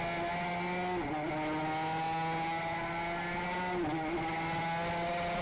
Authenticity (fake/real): real